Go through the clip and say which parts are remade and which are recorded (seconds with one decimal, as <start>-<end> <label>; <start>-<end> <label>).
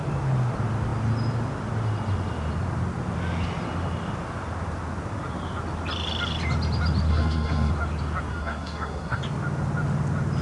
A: 0.0-7.1 recorded; 7.1-7.7 remade; 7.7-8.3 recorded; 8.3-9.2 remade; 9.2-10.4 recorded